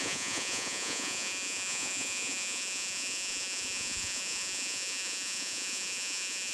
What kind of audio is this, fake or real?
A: fake